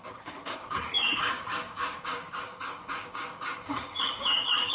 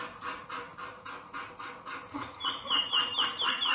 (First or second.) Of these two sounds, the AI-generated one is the first